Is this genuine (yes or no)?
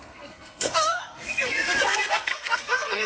no